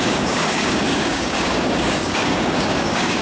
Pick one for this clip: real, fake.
fake